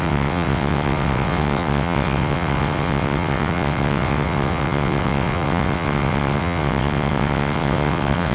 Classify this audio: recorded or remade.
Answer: remade